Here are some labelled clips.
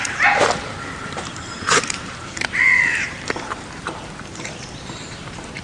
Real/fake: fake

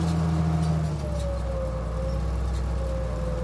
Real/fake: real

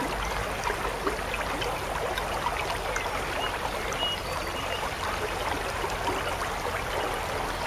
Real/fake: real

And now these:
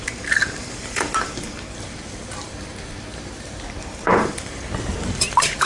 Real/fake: fake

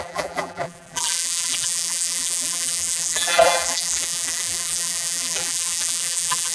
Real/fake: fake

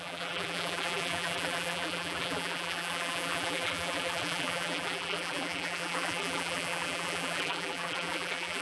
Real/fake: fake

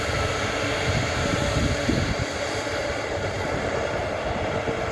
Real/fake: fake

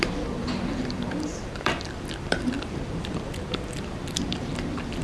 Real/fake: fake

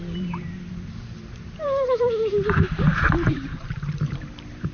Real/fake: fake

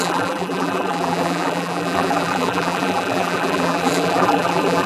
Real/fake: fake